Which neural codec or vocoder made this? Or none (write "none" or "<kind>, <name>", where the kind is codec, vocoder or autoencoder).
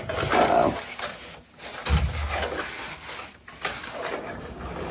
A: none